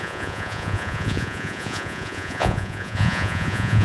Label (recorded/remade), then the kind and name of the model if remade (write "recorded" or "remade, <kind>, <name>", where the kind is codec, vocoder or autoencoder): remade, vocoder, Vocos